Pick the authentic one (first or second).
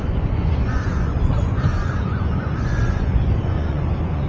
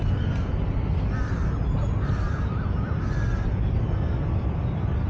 second